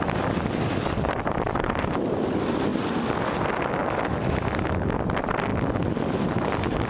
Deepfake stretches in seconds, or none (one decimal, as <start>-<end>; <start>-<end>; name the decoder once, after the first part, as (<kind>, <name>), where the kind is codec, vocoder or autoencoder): 0.0-6.9 (vocoder, BigVGAN v2)

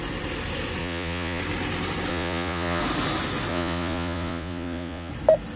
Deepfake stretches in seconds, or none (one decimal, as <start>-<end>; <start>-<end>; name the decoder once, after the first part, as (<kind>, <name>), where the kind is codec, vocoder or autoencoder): 0.8-1.4 (vocoder, Vocos); 2.1-2.8; 3.5-5.1